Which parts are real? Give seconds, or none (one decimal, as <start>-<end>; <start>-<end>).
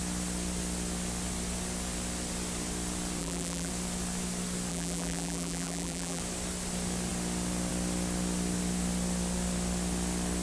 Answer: 0.0-3.2; 3.7-4.7; 6.2-10.4